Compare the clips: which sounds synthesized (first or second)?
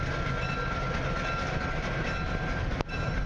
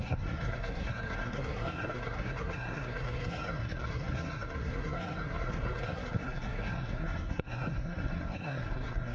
second